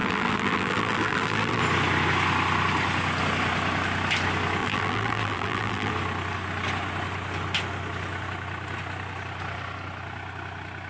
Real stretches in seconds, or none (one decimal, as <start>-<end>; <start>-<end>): 1.6-4.6; 5.9-10.9